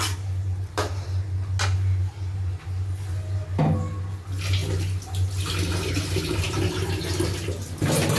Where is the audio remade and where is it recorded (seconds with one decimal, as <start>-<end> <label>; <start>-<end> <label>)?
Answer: 0.0-8.2 recorded